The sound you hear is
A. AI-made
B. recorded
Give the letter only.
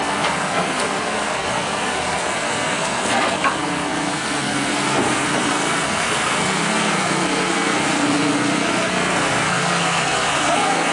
A